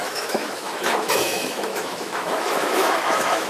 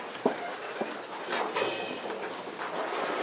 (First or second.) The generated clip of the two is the first